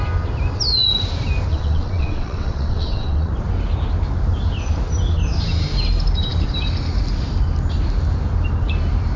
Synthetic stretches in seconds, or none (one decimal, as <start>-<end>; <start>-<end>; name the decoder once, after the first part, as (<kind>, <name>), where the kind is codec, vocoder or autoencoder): 1.5-3.3 (vocoder, WaveNeXt)

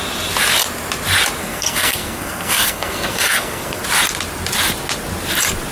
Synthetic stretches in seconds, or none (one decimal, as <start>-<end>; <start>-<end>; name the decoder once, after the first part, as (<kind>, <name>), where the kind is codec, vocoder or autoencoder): 1.4-3.8 (codec, SNAC)

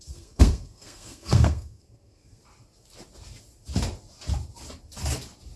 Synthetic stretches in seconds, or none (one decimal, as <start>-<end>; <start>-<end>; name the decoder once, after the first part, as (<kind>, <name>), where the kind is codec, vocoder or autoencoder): 0.0-2.4 (codec, SNAC)

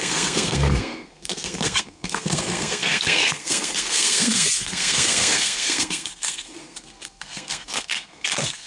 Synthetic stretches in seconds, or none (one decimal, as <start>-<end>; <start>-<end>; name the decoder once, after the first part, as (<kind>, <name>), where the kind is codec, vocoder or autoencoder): 0.0-8.7 (codec, SNAC)